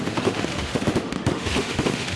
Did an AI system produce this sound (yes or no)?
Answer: yes